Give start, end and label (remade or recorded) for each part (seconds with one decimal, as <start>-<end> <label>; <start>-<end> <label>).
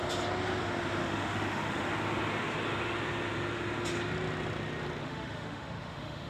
0.0-1.0 recorded; 1.0-1.9 remade; 1.9-5.0 recorded; 5.0-6.3 remade